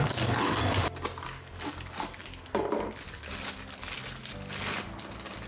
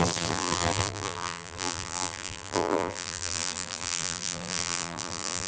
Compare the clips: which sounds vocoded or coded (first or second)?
second